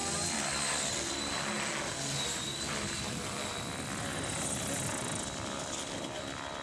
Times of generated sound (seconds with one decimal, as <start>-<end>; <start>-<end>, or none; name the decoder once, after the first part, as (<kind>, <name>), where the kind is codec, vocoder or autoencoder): none